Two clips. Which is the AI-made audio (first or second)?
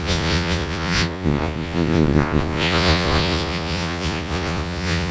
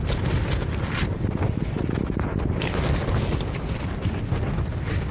first